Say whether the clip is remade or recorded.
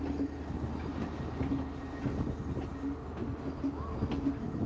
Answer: recorded